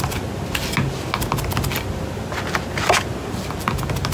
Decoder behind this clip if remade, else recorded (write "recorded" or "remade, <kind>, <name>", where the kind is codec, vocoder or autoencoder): recorded